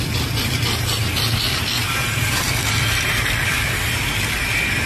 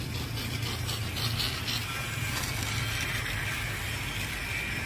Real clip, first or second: second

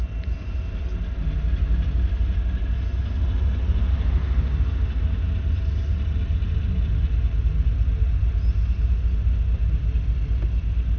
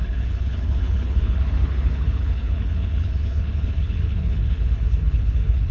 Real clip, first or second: first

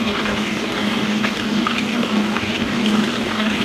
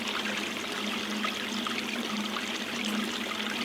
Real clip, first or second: second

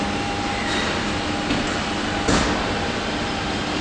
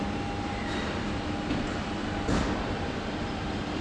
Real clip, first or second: first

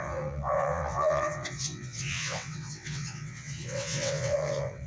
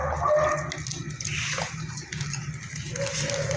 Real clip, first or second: second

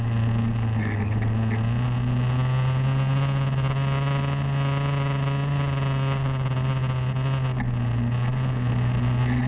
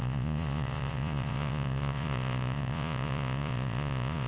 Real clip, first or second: first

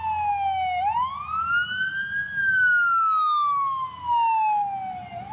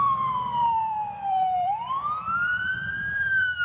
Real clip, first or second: first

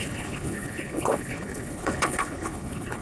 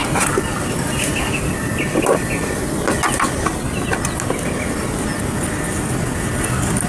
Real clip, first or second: second